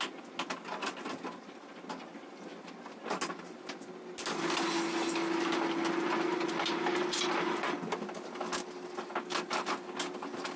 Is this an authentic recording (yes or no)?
yes